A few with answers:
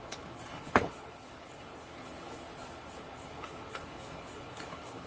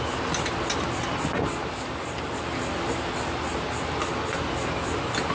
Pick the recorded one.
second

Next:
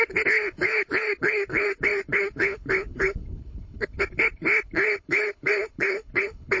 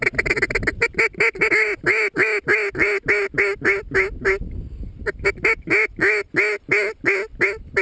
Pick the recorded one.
second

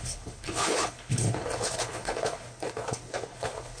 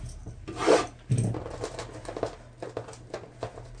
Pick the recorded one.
second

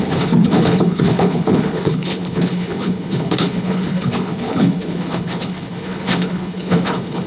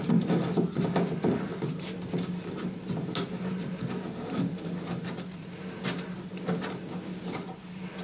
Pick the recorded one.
second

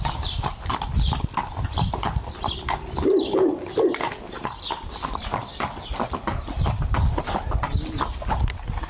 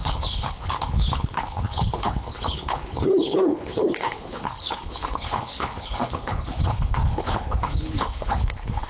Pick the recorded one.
first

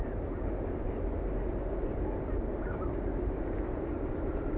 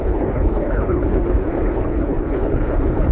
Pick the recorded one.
first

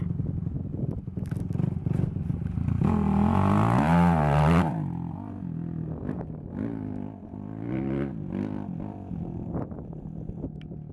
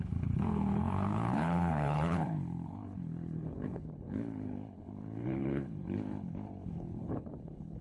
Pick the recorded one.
first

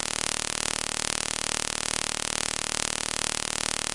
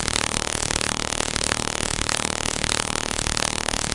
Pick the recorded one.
first